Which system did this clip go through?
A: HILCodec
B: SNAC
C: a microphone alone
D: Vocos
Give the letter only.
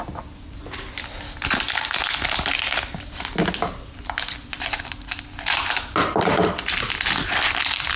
C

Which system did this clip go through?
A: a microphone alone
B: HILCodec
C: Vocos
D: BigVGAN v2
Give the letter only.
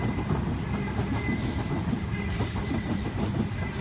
A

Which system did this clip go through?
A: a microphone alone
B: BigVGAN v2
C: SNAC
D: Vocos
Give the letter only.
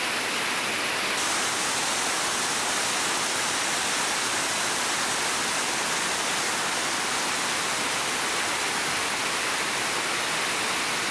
A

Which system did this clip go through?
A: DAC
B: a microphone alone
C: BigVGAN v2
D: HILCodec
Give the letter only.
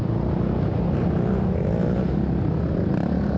B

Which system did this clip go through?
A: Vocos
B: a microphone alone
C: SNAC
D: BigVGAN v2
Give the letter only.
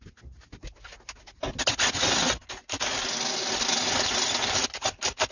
B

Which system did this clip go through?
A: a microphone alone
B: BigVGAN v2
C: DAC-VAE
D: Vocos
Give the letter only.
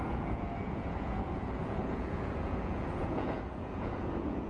D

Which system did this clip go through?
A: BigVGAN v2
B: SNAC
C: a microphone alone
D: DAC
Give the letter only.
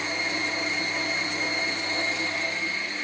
C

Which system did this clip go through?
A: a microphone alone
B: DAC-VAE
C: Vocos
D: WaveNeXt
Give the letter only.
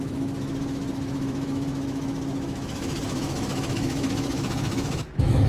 B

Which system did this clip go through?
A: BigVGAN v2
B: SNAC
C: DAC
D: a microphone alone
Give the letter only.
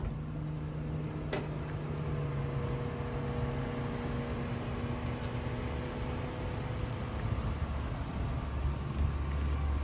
D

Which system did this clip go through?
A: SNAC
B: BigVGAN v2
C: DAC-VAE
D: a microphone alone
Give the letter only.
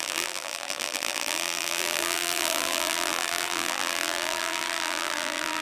B